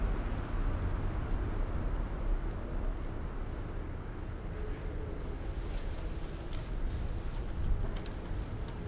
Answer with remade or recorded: recorded